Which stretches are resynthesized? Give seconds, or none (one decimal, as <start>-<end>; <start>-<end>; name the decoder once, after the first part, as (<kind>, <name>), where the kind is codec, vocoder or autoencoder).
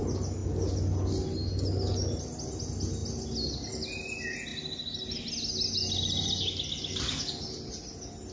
none